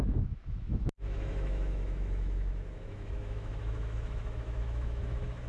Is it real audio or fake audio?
fake